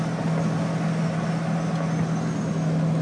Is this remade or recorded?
recorded